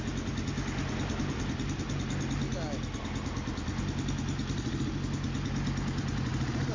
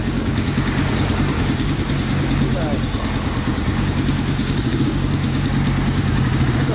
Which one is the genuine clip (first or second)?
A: first